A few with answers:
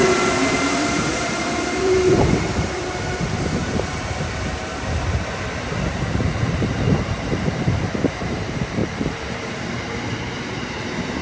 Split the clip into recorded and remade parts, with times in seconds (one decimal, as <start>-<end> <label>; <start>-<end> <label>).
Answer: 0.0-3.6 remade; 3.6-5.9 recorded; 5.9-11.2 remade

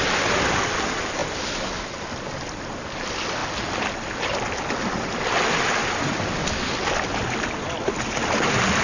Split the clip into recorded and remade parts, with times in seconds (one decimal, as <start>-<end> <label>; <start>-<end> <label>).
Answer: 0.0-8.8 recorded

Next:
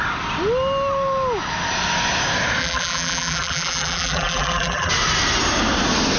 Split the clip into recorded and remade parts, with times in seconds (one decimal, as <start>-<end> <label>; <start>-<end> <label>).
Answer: 0.0-2.6 recorded; 2.6-4.9 remade; 4.9-6.2 recorded